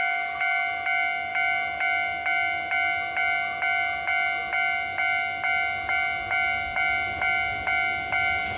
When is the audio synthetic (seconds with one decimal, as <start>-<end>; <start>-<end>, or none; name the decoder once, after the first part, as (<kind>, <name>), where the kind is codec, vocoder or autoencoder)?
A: none